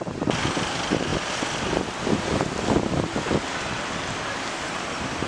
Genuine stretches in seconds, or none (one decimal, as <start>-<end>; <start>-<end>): 0.0-5.3